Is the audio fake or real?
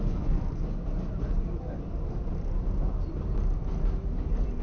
real